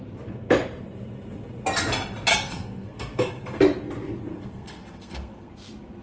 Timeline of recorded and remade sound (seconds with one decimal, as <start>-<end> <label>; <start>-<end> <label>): 0.0-2.3 recorded; 2.3-3.6 remade; 3.6-4.3 recorded; 4.3-5.5 remade; 5.5-6.0 recorded